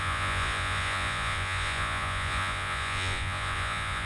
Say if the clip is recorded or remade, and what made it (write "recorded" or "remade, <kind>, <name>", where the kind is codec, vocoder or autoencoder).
remade, vocoder, Vocos